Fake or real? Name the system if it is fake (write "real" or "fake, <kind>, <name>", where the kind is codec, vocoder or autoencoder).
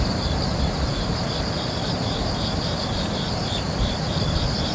fake, vocoder, BigVGAN v2